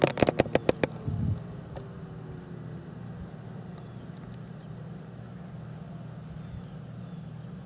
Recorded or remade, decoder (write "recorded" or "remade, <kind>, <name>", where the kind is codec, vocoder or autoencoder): recorded